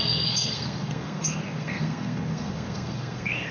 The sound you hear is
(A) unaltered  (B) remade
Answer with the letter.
B